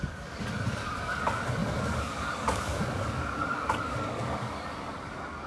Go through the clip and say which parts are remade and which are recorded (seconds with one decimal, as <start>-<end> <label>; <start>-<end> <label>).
0.0-5.5 remade